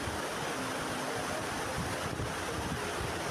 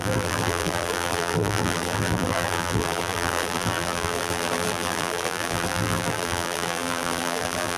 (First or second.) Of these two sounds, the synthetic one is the second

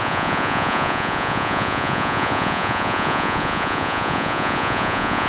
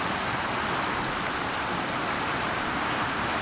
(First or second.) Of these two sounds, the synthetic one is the first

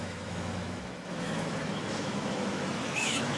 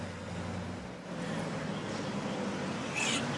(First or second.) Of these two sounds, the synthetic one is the first